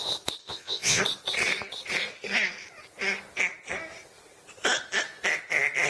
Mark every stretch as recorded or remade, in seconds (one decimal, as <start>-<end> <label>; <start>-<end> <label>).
0.0-0.4 recorded; 0.4-1.0 remade; 1.0-5.9 recorded